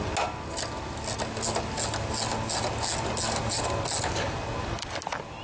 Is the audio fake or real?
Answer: real